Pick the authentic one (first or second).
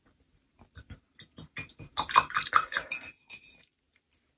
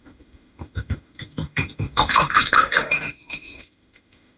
first